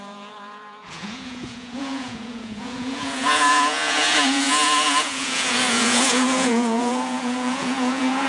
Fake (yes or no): yes